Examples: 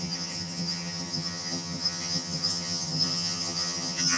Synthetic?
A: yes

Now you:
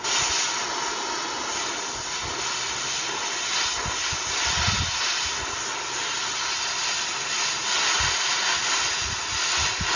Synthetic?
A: no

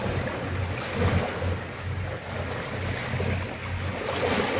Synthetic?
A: no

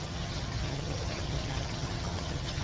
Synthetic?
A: yes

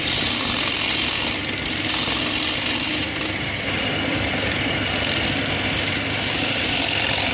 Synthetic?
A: no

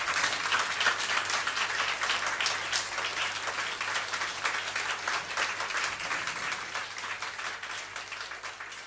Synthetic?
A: no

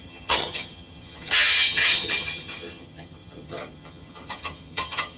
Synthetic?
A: yes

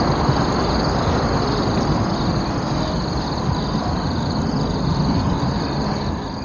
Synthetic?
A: no